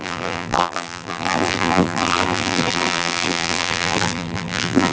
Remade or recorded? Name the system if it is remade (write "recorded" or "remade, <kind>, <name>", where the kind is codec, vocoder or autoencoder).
remade, vocoder, BigVGAN v2